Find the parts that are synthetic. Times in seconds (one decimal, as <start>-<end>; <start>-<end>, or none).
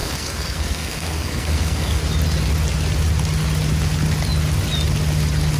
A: 0.0-2.0